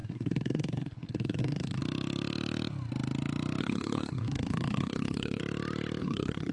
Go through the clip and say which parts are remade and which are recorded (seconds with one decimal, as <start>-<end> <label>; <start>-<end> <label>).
0.0-1.8 remade; 1.8-3.6 recorded; 3.6-5.4 remade; 5.4-6.0 recorded; 6.0-6.5 remade